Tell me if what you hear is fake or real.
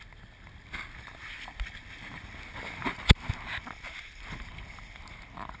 real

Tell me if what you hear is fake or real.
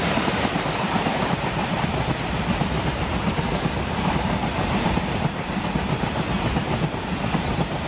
fake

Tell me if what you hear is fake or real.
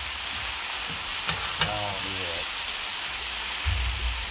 real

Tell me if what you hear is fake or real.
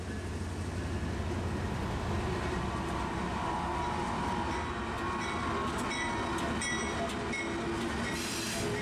real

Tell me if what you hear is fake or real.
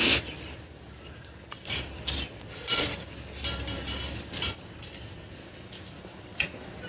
real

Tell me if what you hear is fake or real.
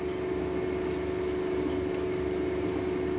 real